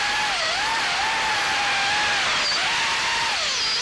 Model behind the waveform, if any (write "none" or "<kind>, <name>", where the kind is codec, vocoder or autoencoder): none